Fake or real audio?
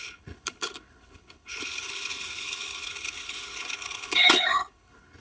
fake